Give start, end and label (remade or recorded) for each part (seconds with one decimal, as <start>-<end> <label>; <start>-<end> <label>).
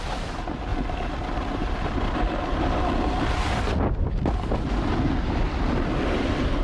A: 0.0-6.6 recorded